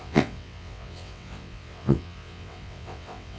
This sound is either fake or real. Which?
fake